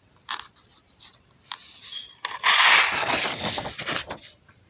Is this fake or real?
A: real